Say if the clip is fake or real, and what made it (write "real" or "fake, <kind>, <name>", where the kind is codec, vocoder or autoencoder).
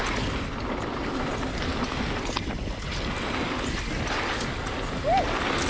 real